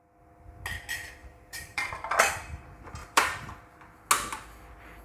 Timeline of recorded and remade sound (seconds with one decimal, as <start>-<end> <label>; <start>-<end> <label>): 0.0-1.2 recorded; 1.2-1.9 remade; 1.9-3.0 recorded; 3.0-3.5 remade; 3.5-5.0 recorded